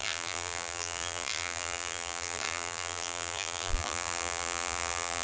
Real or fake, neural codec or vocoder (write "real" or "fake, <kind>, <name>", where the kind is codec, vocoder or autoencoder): fake, vocoder, BigVGAN v2